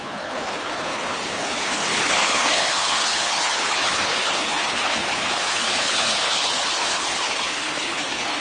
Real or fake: fake